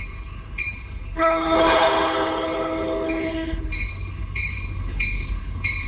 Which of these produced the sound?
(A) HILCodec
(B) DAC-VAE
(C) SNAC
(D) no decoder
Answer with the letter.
A